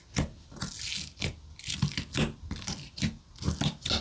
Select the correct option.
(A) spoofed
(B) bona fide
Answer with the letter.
B